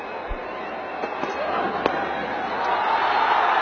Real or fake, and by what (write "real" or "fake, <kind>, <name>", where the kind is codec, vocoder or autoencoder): real